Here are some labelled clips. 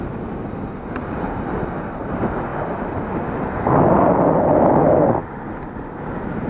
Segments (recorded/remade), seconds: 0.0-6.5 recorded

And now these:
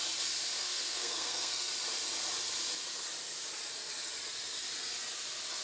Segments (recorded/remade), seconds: 0.0-0.6 recorded; 0.6-1.7 remade; 1.7-5.6 recorded

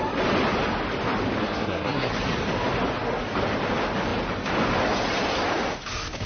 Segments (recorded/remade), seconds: 0.0-1.4 recorded; 1.4-2.1 remade; 2.1-6.3 recorded

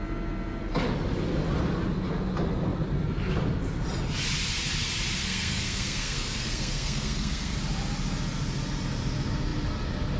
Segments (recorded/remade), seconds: 0.0-5.2 recorded; 5.2-7.5 remade; 7.5-10.2 recorded

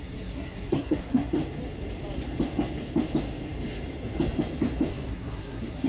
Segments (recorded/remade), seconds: 0.0-1.4 remade; 1.4-4.9 recorded; 4.9-5.9 remade

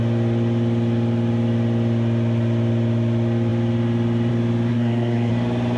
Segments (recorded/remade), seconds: 0.0-4.7 recorded; 4.7-5.3 remade; 5.3-5.8 recorded

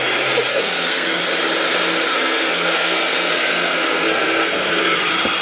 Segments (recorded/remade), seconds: 0.0-0.5 recorded; 0.5-1.2 remade; 1.2-2.1 recorded; 2.1-5.0 remade; 5.0-5.4 recorded

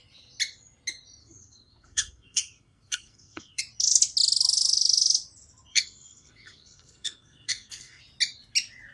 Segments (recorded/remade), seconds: 0.0-1.2 recorded; 1.2-3.6 remade; 3.6-5.7 recorded; 5.7-8.0 remade; 8.0-8.9 recorded